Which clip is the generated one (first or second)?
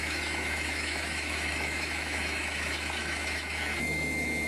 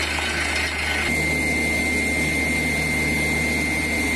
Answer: first